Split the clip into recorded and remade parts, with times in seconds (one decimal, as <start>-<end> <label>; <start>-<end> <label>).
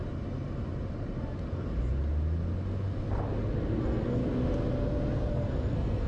0.0-3.7 recorded; 3.7-4.2 remade; 4.2-5.3 recorded; 5.3-6.1 remade